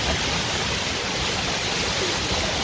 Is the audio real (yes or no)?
yes